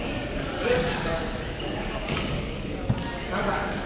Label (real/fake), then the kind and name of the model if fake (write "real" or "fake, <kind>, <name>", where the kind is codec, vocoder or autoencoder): fake, codec, DAC